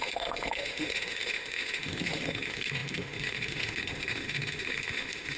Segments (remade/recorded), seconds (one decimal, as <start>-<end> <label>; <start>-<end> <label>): 0.0-5.4 remade